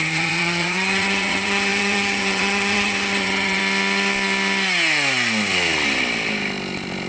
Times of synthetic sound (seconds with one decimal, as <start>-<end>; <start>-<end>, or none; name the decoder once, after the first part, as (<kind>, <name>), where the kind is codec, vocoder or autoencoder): 0.0-3.6 (vocoder, HiFi-GAN)

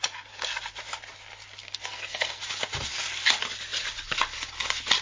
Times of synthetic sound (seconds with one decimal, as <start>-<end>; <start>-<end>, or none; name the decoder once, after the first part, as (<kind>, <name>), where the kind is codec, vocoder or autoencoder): 1.6-2.4 (codec, SNAC)